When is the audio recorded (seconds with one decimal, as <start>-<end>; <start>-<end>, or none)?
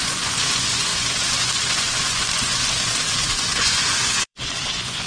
none